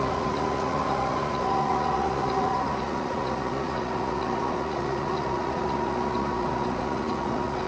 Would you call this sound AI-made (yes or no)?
yes